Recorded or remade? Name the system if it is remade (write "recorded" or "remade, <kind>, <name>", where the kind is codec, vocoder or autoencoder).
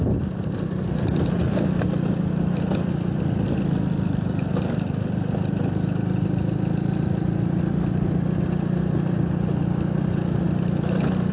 recorded